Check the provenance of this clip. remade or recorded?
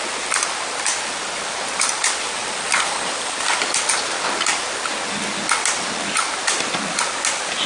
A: recorded